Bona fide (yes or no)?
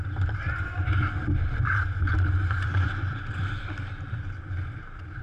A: no